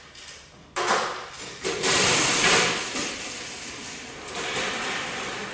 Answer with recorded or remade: recorded